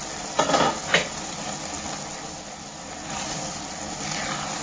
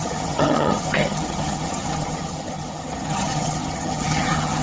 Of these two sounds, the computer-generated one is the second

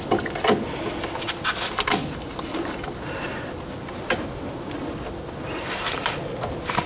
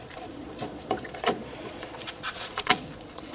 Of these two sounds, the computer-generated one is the second